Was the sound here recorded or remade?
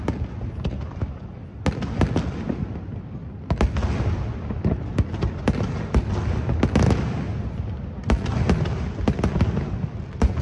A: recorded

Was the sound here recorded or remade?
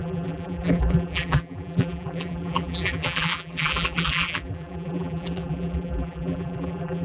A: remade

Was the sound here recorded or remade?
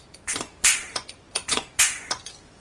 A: remade